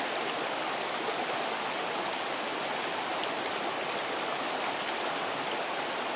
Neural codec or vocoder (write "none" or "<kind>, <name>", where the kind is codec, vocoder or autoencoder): none